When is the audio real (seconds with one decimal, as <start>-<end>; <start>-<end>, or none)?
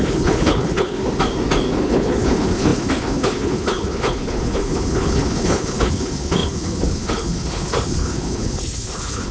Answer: 1.0-1.8